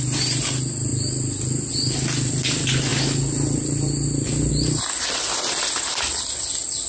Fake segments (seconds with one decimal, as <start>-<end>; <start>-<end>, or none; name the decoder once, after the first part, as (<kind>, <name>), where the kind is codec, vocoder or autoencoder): none